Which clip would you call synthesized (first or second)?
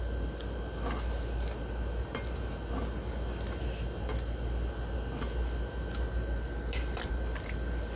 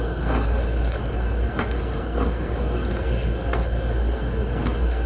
second